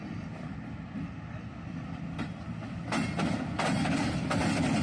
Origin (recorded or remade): recorded